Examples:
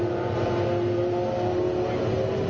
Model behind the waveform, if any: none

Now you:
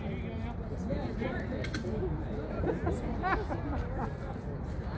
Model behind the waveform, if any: none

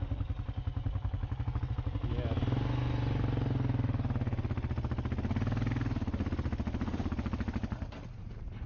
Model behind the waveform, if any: none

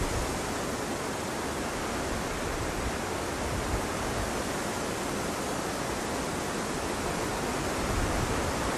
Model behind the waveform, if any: none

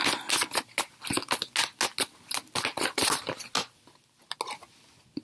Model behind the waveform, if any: none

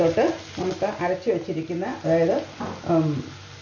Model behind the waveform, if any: none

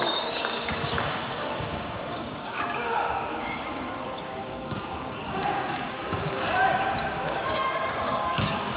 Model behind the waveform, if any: codec, DAC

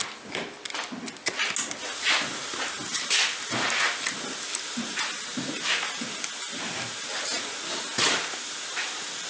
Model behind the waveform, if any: none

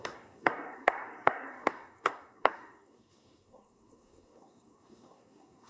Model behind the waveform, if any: codec, SNAC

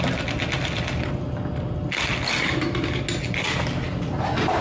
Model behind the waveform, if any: none